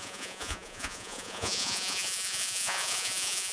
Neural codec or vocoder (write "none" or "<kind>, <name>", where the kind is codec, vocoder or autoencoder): vocoder, Vocos